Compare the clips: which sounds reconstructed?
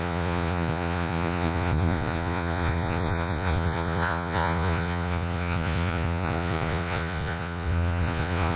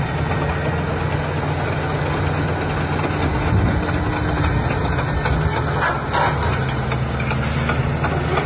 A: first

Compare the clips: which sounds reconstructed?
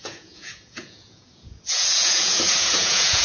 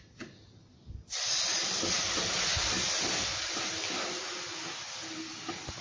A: first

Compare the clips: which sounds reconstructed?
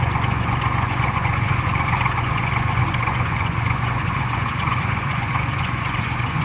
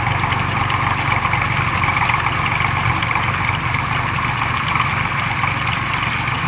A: first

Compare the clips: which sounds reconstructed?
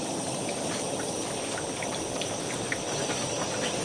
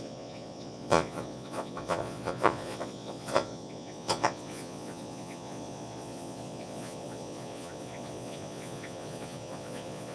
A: second